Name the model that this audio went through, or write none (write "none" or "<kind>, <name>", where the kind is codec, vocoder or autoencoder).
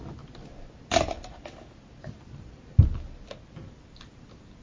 none